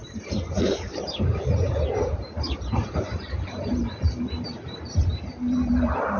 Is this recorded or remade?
remade